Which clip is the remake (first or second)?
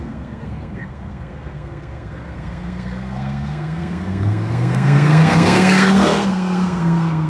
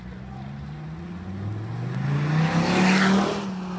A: first